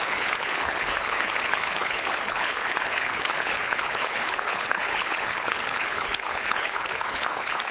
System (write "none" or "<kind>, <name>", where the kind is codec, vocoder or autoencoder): codec, HILCodec